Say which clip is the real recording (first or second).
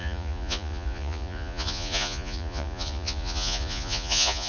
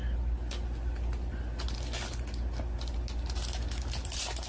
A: second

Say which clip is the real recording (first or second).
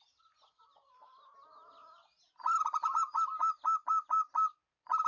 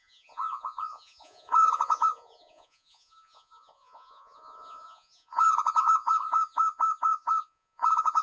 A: first